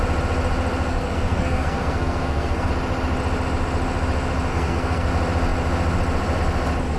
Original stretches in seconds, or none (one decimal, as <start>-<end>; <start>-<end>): 0.0-0.9; 2.7-4.5; 5.1-7.0